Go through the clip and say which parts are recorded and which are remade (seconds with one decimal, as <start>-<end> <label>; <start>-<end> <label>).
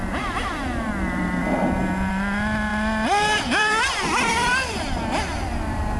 0.0-1.4 remade; 1.4-2.1 recorded; 2.1-6.0 remade